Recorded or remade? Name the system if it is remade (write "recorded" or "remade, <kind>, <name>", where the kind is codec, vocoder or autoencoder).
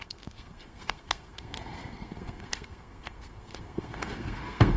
remade, codec, SNAC